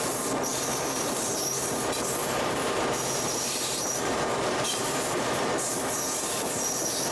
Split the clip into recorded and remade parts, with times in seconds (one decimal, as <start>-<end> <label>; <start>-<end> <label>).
0.0-0.5 recorded; 0.5-1.3 remade; 1.3-2.2 recorded; 2.2-5.7 remade; 5.7-7.1 recorded